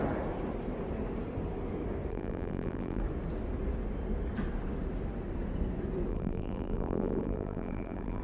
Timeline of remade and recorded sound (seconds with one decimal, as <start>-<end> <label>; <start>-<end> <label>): 0.0-2.1 recorded; 2.1-3.0 remade; 3.0-6.1 recorded; 6.1-8.2 remade